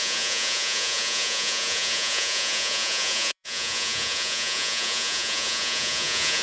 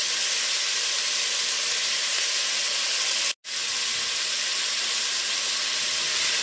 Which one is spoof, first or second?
first